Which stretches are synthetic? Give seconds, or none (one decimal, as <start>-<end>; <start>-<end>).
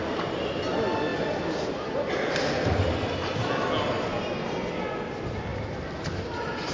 none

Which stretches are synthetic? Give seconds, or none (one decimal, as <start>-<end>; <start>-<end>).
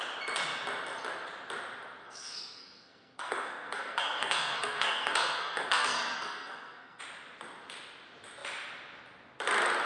2.0-7.0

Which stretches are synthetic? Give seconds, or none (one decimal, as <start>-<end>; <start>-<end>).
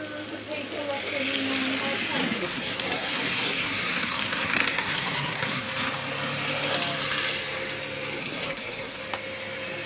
2.2-5.6; 8.2-9.0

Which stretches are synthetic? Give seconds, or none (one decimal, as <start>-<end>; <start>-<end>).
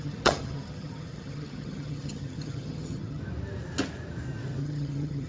0.0-3.2; 4.6-5.3